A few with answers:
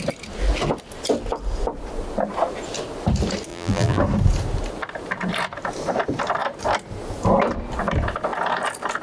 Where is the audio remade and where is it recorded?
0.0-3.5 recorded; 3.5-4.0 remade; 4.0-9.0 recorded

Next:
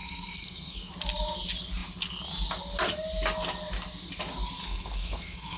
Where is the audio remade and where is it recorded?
0.0-0.9 remade; 0.9-4.6 recorded; 4.6-5.6 remade

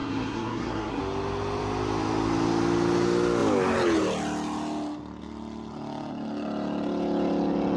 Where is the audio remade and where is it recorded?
0.0-1.0 remade; 1.0-7.8 recorded

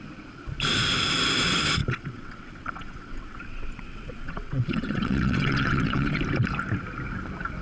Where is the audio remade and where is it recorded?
0.0-1.8 recorded; 1.8-6.2 remade; 6.2-7.6 recorded

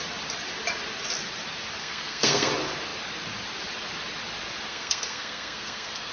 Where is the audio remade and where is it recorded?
0.0-1.8 recorded; 1.8-2.5 remade; 2.5-4.7 recorded; 4.7-6.1 remade